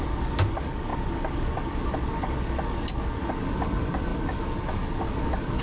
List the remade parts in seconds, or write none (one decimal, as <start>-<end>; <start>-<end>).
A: 0.0-5.6